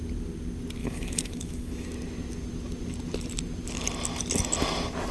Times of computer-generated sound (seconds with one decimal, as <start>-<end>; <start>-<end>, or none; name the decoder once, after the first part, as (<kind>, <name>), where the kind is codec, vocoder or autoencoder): 0.8-1.9 (autoencoder, DAC-VAE)